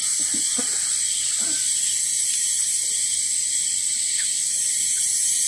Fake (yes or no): yes